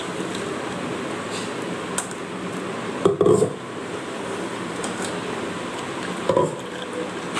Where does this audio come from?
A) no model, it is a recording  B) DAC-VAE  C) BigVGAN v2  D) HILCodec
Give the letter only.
A